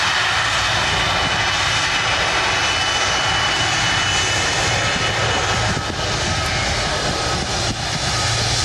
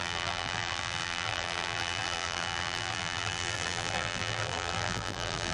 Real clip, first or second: first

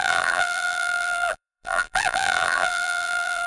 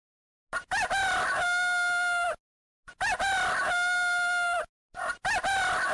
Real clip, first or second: second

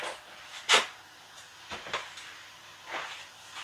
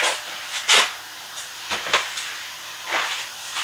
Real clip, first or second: second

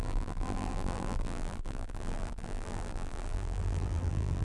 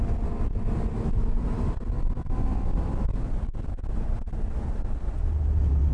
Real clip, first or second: second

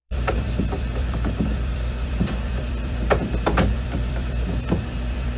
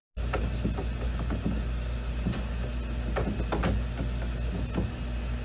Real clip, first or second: second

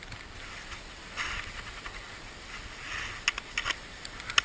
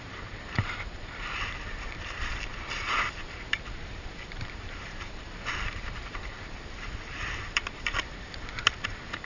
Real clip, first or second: first